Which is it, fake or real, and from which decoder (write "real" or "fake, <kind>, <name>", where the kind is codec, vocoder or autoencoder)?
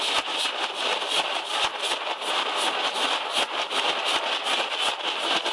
real